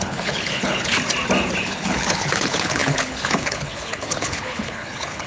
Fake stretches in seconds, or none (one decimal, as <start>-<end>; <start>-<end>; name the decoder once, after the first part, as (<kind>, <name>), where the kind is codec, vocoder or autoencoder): 0.0-0.9 (codec, HILCodec); 1.6-5.3